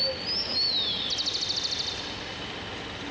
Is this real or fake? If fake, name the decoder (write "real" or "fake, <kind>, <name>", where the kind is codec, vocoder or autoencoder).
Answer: real